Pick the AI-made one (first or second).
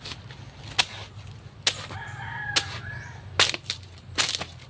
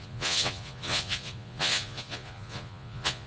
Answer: second